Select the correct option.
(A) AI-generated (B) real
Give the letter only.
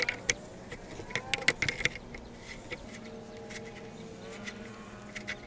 B